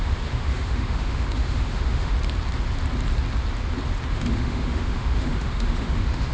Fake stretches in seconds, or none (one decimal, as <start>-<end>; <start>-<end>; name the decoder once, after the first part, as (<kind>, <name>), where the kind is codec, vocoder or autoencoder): 0.0-2.1 (autoencoder, DAC-VAE); 4.1-6.3